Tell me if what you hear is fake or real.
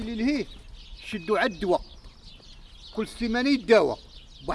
real